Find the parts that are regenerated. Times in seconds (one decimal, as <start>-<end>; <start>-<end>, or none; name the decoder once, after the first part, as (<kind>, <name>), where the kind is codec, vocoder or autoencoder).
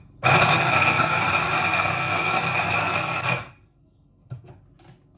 0.5-1.2 (codec, SNAC); 1.6-2.4; 2.8-4.5